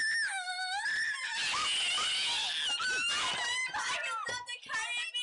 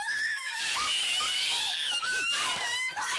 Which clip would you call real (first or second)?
first